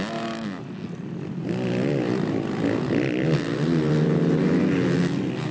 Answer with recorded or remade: recorded